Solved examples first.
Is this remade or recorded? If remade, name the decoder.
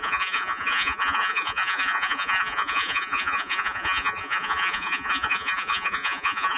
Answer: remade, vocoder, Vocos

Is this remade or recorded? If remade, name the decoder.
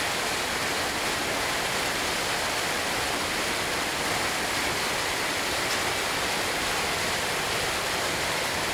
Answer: recorded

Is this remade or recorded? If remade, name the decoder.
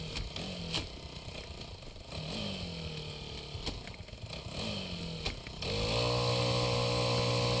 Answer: recorded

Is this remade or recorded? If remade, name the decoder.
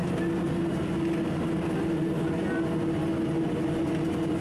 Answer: recorded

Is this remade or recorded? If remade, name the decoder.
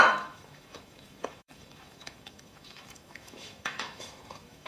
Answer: remade, autoencoder, DAC-VAE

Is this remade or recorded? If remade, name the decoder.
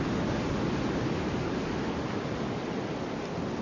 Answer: recorded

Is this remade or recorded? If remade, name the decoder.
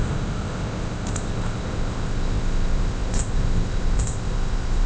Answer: remade, codec, ZipCodec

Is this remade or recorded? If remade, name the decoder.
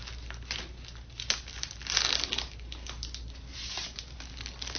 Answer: recorded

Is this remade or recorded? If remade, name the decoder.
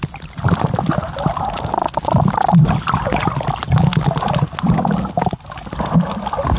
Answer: recorded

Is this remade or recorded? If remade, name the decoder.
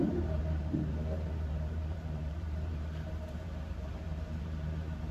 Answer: remade, vocoder, BigVGAN v2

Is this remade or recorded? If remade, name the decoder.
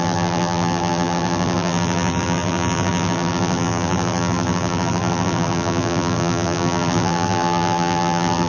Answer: remade, vocoder, BigVGAN v2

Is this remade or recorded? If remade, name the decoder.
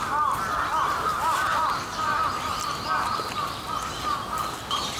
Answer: recorded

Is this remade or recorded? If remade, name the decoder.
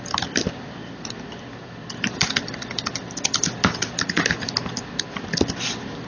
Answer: recorded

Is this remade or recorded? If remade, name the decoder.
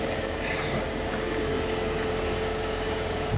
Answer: remade, codec, DAC